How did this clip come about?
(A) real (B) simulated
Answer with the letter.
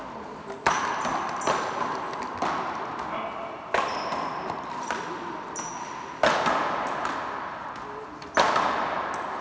A